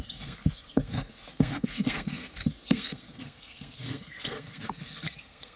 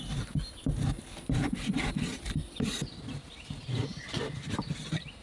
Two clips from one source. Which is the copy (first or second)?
first